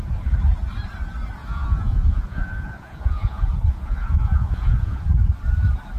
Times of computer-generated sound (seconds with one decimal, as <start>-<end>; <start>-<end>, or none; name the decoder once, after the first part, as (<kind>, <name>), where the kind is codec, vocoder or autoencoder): 1.4-5.0 (vocoder, Vocos)